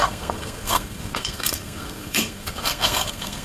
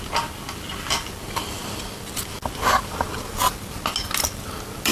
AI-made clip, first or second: first